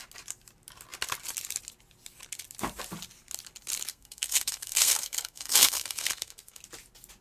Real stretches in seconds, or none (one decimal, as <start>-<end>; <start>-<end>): 0.0-3.9; 6.6-7.2

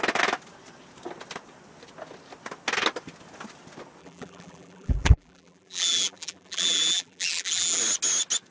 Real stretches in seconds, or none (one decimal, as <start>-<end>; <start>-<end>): 0.0-4.0; 7.8-8.5

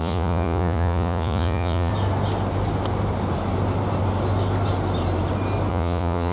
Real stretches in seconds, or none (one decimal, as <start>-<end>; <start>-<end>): 1.9-5.7

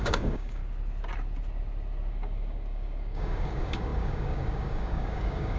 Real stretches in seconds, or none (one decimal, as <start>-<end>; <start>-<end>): 0.6-2.1

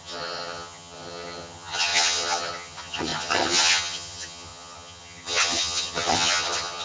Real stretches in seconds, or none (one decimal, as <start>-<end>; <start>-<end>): none

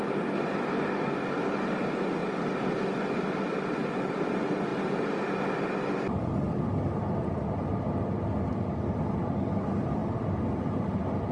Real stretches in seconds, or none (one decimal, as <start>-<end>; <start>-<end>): 0.0-11.3

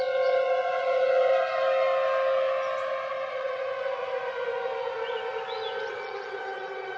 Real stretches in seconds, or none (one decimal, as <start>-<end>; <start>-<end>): 1.3-3.3; 4.0-5.9